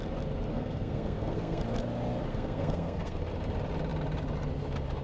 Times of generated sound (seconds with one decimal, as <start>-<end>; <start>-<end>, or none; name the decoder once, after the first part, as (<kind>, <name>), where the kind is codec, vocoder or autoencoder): 0.5-1.6 (codec, SNAC); 2.3-3.2